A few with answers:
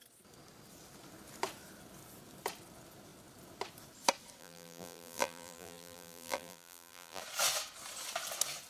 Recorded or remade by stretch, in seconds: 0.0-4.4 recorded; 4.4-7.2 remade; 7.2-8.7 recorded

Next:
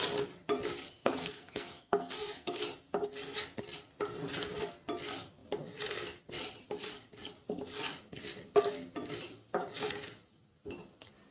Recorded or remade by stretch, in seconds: 0.0-1.0 recorded; 1.0-2.6 remade; 2.6-11.3 recorded